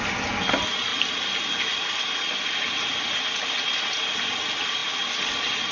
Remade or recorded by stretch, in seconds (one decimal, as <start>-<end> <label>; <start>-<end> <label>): 0.0-0.9 recorded; 0.9-1.8 remade; 1.8-5.7 recorded